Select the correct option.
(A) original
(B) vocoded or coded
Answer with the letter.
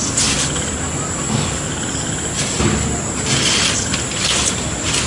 A